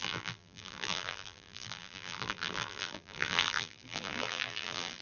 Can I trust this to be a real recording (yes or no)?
no